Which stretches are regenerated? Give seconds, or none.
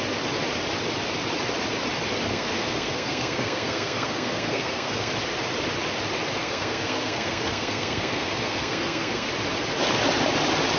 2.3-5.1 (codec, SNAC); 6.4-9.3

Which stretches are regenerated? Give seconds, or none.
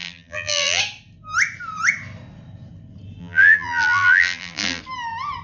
0.0-0.8 (vocoder, BigVGAN v2); 3.2-4.8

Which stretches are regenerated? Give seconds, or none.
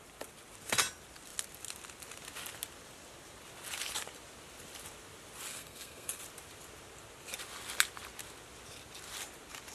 5.5-6.2 (codec, SNAC)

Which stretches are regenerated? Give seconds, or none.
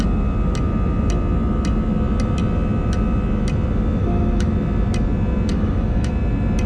4.0-4.5 (autoencoder, DAC-VAE); 5.5-6.1